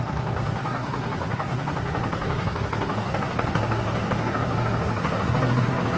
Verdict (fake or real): fake